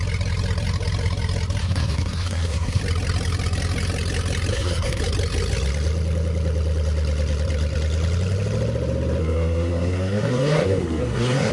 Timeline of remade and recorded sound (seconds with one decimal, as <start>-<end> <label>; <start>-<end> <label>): 0.0-1.6 recorded; 1.6-2.8 remade; 2.8-4.5 recorded; 4.5-5.0 remade; 5.0-9.2 recorded; 9.2-11.5 remade